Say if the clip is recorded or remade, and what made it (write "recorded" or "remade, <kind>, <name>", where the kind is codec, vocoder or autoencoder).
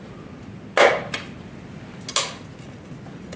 recorded